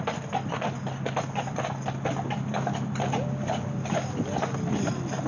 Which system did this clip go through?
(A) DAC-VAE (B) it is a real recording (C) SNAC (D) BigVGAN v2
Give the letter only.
B